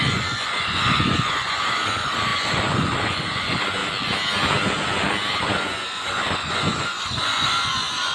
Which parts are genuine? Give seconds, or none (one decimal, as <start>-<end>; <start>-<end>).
3.8-5.4